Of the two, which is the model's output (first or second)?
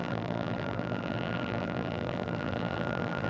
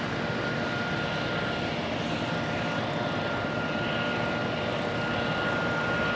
first